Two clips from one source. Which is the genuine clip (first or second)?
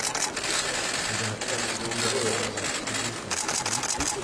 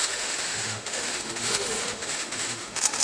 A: first